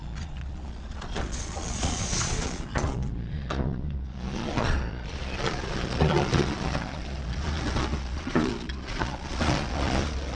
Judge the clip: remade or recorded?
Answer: remade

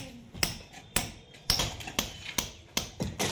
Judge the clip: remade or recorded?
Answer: recorded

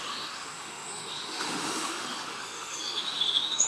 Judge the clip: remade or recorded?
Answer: remade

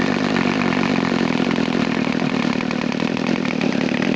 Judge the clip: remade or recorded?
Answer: recorded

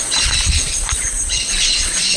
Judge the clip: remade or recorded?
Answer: remade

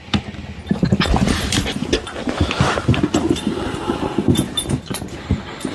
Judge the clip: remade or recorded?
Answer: recorded